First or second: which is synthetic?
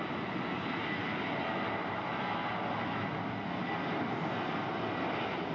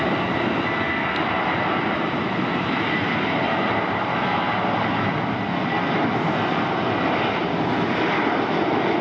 second